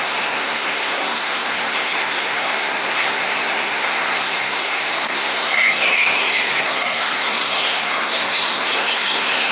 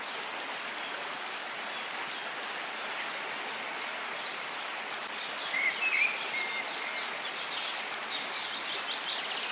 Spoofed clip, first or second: first